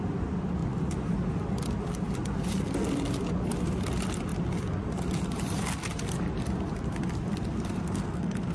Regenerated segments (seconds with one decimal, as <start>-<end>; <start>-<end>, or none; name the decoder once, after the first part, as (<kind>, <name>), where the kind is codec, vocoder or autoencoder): 7.8-8.5 (codec, SNAC)